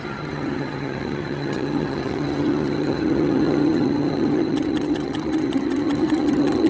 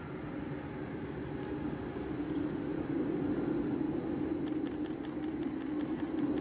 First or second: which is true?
second